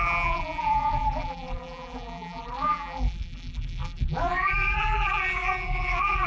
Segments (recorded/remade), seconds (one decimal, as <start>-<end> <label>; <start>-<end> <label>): 0.0-6.3 remade